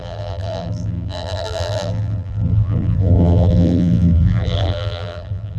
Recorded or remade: remade